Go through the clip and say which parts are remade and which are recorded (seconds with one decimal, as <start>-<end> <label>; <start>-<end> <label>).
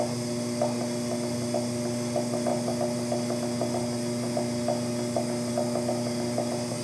0.0-6.8 recorded